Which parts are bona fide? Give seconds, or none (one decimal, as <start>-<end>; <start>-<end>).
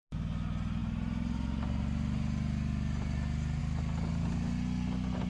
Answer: 0.0-5.3